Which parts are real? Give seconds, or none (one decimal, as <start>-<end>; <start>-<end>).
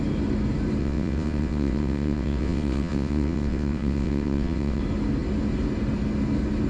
0.0-0.8; 4.8-6.7